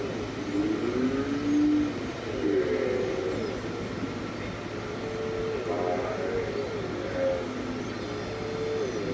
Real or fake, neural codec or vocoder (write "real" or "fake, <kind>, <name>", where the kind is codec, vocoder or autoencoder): real